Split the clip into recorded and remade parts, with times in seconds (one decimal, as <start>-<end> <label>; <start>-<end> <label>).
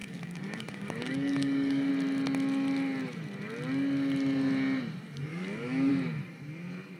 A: 0.0-1.9 remade; 1.9-5.3 recorded; 5.3-5.9 remade; 5.9-7.0 recorded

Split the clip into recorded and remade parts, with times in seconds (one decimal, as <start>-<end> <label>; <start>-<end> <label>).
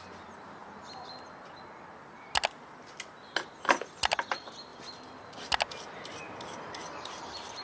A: 0.0-7.6 recorded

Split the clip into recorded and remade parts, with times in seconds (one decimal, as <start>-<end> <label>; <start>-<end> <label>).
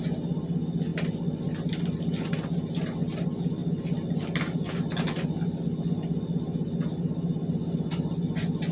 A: 0.0-8.7 recorded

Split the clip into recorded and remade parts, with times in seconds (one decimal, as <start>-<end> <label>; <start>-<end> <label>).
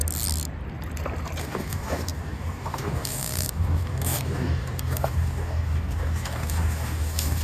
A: 0.0-1.4 recorded; 1.4-7.4 remade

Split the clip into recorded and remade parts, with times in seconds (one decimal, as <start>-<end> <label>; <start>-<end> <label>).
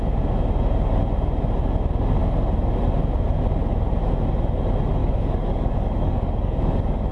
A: 0.0-5.0 recorded; 5.0-7.1 remade